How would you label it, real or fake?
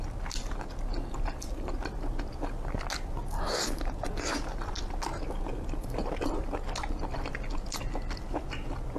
real